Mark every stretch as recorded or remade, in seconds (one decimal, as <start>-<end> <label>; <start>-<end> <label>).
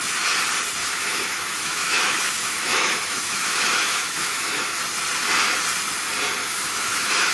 0.0-0.8 recorded; 0.8-4.8 remade; 4.8-6.4 recorded; 6.4-7.3 remade